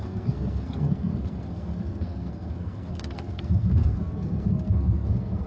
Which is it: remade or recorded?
remade